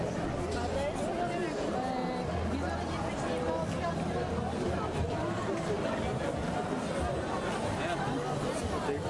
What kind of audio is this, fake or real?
real